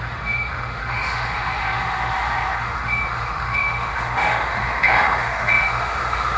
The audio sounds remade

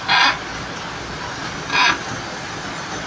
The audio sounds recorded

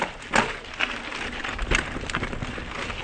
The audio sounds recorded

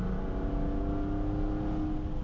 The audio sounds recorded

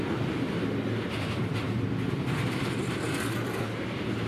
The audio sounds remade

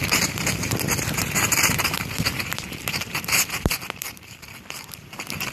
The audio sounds remade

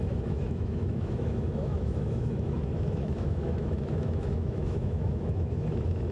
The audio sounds remade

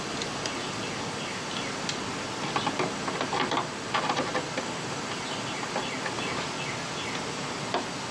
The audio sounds recorded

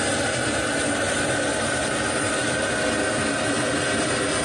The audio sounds recorded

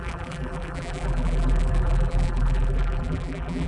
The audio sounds remade